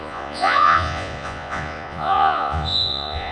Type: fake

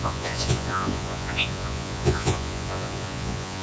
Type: fake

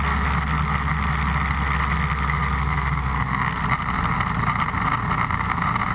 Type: real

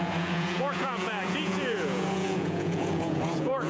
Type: fake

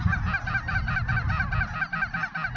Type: real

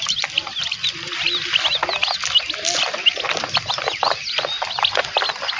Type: real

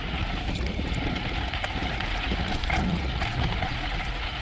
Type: fake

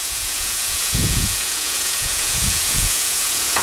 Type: fake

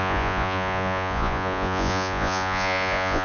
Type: fake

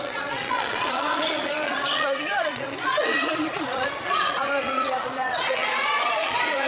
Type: fake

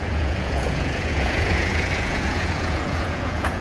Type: fake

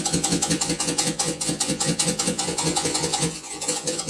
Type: fake